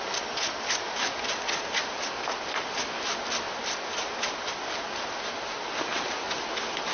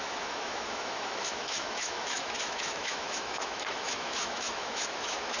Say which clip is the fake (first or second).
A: second